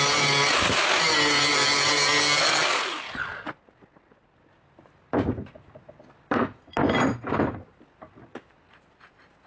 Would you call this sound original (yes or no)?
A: yes